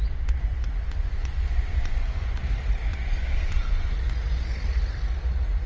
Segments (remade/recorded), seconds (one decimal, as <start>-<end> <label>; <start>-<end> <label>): 0.0-0.5 recorded; 0.5-2.4 remade; 2.4-2.9 recorded; 2.9-3.9 remade; 3.9-5.7 recorded